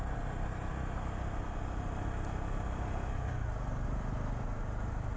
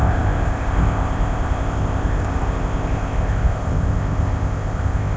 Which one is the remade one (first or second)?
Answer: second